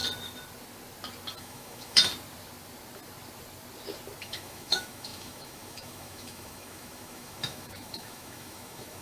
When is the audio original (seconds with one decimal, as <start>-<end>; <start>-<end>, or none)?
0.0-1.4; 2.1-4.2